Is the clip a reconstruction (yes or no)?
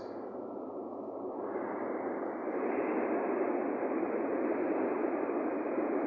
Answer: no